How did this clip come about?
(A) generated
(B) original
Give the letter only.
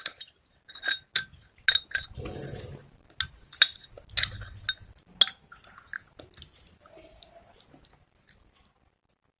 B